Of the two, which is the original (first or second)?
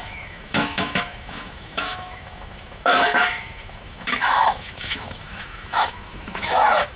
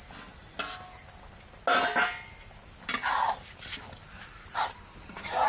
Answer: second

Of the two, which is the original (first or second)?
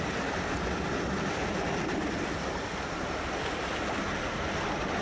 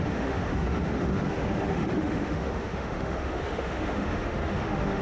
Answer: first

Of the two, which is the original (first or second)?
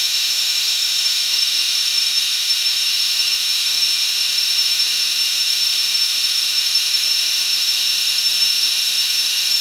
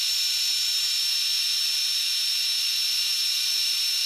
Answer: second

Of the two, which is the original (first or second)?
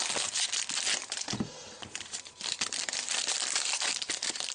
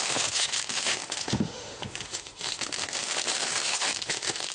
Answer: first